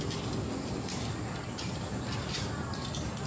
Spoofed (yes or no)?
no